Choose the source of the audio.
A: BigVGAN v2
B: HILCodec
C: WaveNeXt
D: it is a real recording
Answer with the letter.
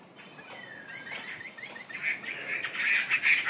D